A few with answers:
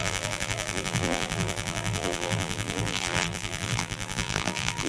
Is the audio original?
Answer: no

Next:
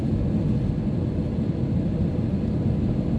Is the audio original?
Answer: yes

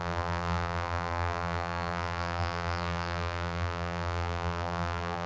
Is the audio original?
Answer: no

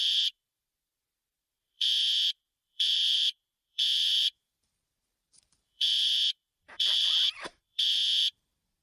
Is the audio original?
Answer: no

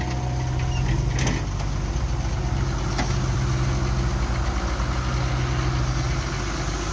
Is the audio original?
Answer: yes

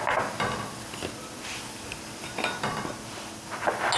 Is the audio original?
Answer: yes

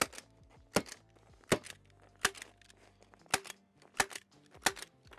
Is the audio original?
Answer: yes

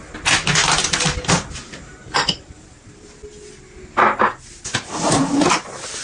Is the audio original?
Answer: yes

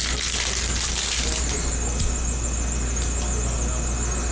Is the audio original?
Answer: yes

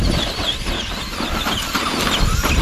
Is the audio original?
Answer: yes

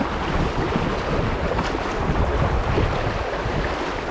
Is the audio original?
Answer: yes